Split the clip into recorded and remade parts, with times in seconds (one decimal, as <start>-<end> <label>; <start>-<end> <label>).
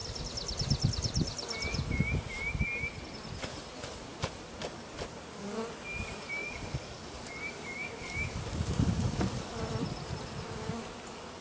0.0-6.4 recorded; 6.4-9.6 remade; 9.6-11.4 recorded